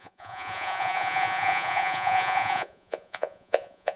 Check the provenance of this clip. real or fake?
fake